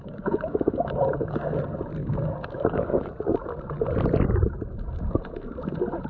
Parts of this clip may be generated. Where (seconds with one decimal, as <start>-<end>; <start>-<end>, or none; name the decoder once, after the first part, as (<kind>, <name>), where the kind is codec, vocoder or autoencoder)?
0.0-1.5 (codec, DAC); 2.0-3.1